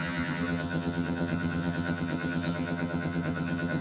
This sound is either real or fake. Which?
fake